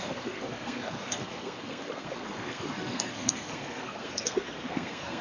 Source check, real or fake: fake